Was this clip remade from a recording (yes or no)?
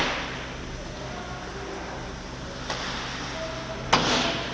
no